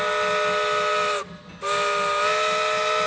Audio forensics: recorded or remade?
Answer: recorded